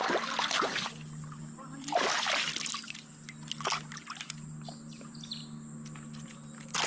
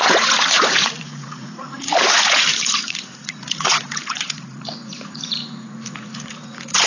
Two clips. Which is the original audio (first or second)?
first